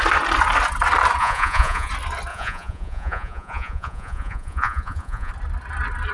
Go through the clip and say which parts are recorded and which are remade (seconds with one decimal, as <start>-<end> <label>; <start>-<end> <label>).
0.0-1.2 recorded; 1.2-1.9 remade; 1.9-2.3 recorded; 2.3-5.3 remade; 5.3-6.1 recorded